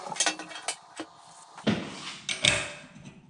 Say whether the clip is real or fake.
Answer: real